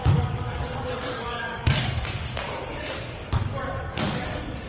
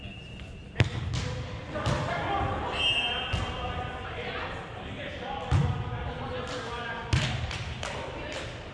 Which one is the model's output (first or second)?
first